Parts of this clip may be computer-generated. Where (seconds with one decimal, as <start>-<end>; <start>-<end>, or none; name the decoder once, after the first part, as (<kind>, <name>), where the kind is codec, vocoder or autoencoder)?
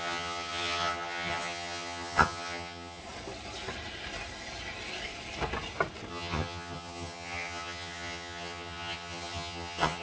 0.0-3.0 (vocoder, HiFi-GAN); 6.1-10.0